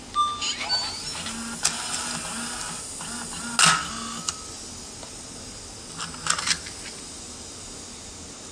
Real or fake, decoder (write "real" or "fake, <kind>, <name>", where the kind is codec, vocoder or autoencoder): real